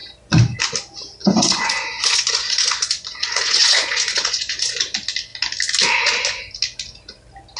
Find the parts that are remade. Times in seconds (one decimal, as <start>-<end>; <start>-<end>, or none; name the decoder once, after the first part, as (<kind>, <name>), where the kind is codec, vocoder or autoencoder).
1.2-4.8 (vocoder, Vocos)